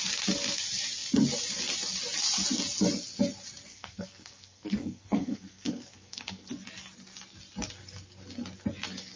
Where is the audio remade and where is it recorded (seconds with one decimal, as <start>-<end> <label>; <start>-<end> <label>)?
0.0-3.7 recorded; 3.7-6.5 remade; 6.5-9.2 recorded